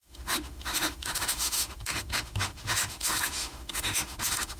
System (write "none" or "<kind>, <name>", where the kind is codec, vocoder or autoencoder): autoencoder, DAC-VAE